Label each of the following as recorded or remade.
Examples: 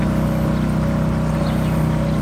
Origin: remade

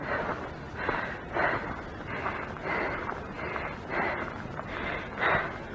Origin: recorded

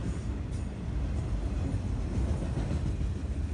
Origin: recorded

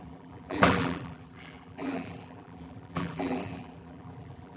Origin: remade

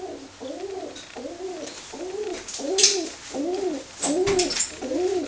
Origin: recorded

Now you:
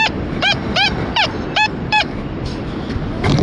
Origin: recorded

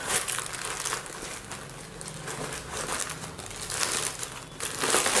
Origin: recorded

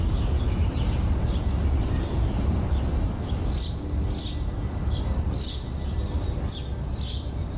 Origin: recorded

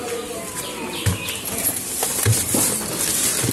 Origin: recorded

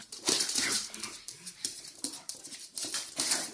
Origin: remade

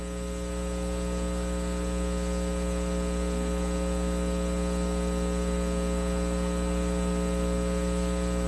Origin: recorded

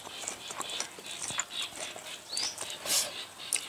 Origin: recorded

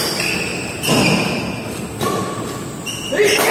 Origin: recorded